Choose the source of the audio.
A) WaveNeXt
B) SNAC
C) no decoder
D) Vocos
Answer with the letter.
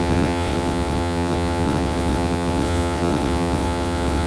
A